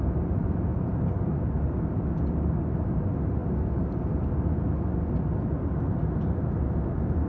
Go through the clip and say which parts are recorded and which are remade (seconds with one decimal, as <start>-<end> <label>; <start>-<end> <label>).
0.0-7.3 recorded